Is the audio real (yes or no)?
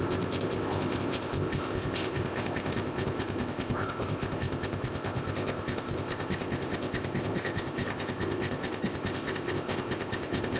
no